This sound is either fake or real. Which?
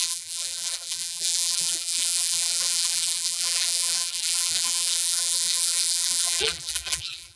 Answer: fake